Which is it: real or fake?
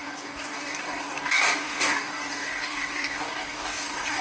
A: fake